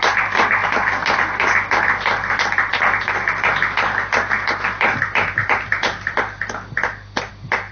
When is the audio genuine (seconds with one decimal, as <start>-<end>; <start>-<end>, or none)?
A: 0.0-7.7